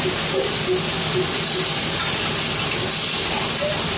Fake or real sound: real